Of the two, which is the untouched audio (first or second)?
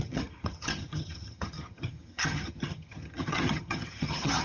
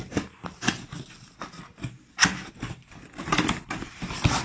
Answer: second